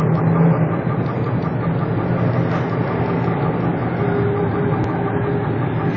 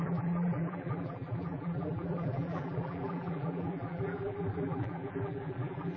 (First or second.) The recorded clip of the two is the first